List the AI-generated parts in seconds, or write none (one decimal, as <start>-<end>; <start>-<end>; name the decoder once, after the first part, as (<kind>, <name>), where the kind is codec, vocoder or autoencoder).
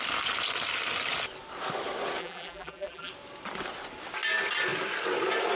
2.2-3.1 (vocoder, BigVGAN v2)